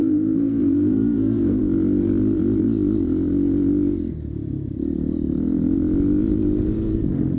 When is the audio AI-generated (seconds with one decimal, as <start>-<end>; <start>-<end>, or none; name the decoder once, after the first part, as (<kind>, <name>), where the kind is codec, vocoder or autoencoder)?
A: 0.0-1.6 (codec, SNAC)